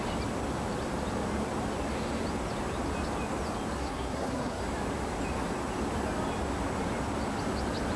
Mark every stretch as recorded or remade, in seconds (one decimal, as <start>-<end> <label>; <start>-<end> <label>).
0.0-3.8 recorded; 3.8-4.6 remade; 4.6-8.0 recorded